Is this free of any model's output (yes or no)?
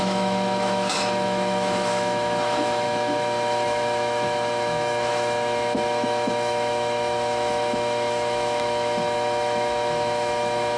no